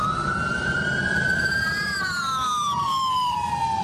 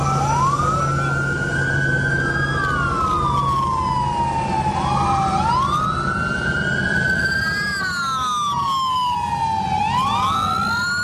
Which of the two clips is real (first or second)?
second